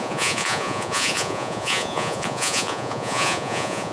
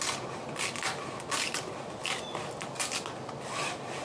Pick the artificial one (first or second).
first